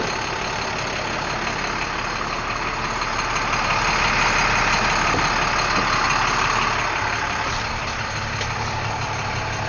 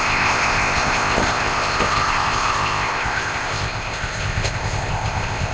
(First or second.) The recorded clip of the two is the first